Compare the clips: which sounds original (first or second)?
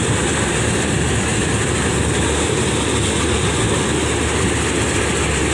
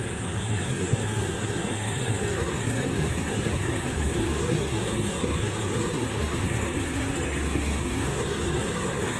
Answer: first